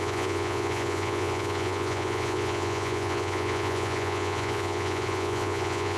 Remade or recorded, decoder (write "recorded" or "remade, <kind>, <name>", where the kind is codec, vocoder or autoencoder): remade, vocoder, Vocos